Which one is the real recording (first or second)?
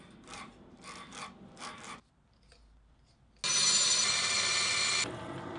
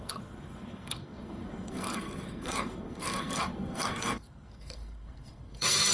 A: first